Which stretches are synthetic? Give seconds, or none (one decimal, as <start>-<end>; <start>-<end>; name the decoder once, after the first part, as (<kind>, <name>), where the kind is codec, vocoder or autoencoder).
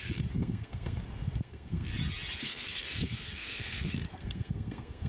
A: 0.0-1.9 (codec, SNAC); 2.4-5.1